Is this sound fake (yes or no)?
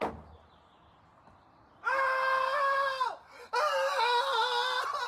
no